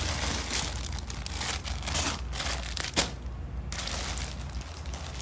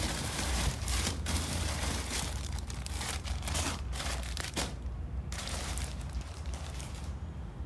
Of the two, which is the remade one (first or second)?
second